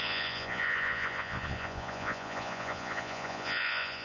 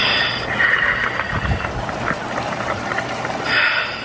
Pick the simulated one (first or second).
first